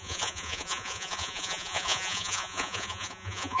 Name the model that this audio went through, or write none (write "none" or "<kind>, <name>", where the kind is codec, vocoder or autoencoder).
vocoder, Vocos